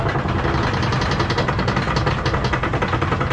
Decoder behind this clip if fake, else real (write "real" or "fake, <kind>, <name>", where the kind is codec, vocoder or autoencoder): real